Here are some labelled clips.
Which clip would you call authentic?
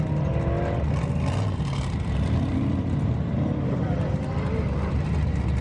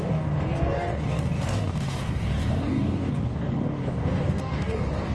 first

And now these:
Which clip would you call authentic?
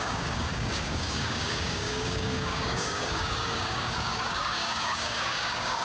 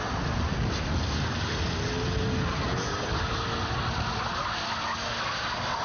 second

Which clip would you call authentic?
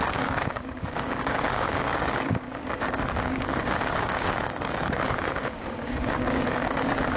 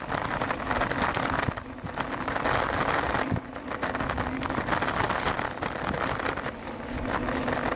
second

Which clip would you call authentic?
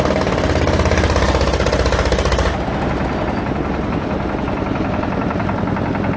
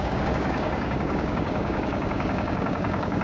first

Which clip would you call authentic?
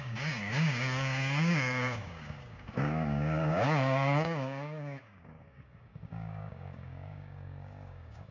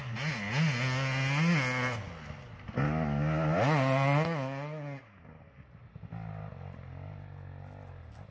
second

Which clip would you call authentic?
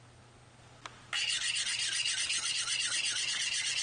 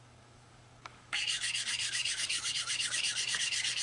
first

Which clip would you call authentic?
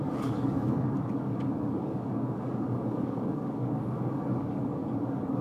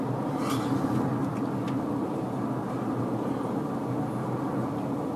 second